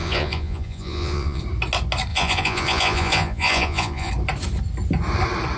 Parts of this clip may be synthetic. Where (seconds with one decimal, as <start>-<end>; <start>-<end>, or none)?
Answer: 0.0-1.4; 2.1-4.1